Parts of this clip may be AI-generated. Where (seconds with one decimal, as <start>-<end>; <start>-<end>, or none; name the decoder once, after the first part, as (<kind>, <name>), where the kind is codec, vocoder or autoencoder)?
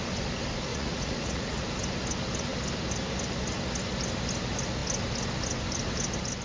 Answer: 0.7-1.6 (vocoder, Vocos)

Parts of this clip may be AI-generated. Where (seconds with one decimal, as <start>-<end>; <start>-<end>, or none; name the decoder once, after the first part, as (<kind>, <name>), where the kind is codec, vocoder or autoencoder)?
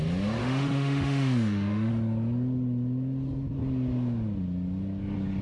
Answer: 0.4-1.9 (autoencoder, DAC-VAE)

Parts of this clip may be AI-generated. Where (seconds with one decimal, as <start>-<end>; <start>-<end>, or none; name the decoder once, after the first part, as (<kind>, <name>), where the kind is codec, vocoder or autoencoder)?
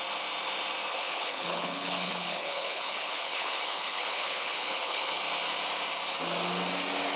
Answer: 0.9-5.2 (codec, HILCodec)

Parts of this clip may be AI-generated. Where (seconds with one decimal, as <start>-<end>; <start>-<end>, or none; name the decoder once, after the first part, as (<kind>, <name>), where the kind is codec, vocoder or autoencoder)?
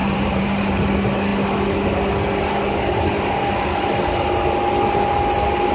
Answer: 0.0-0.7 (vocoder, BigVGAN v2)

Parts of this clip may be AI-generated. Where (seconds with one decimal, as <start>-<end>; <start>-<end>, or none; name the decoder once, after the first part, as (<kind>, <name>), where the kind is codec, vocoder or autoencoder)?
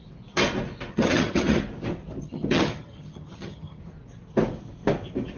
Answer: 0.9-1.6 (vocoder, HiFi-GAN); 2.2-3.8